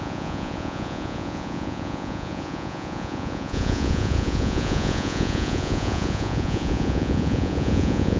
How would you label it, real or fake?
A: fake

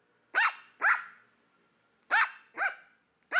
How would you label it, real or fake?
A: real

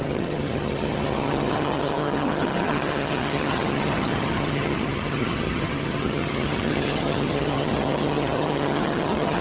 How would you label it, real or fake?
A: fake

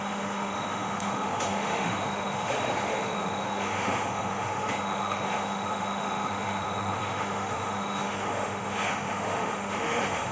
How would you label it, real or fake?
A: fake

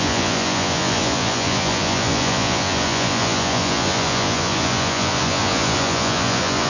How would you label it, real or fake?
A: fake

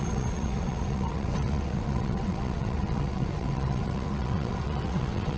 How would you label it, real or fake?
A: fake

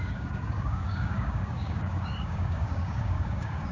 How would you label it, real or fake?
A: fake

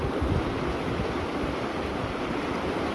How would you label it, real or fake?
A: real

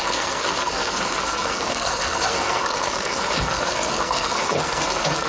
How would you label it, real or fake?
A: fake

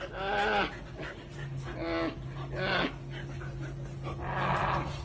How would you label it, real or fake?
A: real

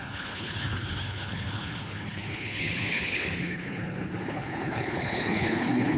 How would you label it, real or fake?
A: fake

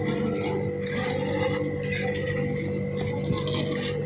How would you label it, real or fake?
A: real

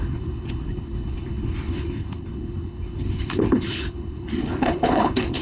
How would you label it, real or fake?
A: fake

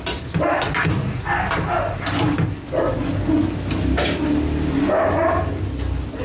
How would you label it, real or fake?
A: real